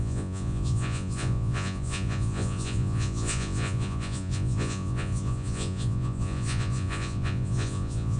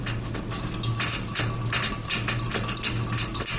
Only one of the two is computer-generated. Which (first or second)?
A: first